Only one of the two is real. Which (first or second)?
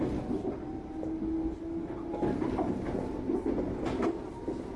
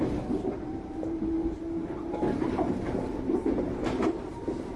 first